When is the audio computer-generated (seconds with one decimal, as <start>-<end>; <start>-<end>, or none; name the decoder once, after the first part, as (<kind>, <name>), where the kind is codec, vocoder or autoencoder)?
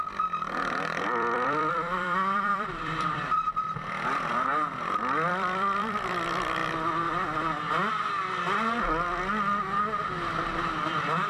0.0-4.5 (vocoder, BigVGAN v2); 5.3-6.6; 10.8-11.3